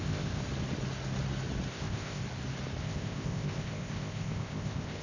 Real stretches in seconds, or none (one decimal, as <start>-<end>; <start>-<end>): 0.4-1.7; 2.2-2.8

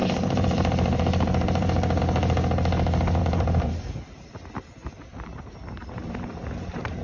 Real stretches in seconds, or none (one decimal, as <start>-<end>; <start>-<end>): 2.0-3.2

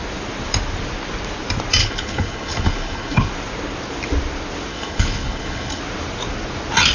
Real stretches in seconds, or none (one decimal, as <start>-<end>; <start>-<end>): 0.0-1.8; 3.3-4.7; 5.8-6.9